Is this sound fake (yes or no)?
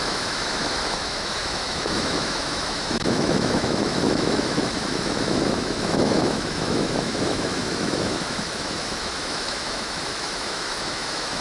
yes